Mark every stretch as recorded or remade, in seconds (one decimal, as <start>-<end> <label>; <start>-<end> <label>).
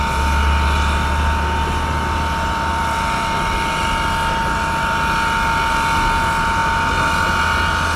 0.0-8.0 recorded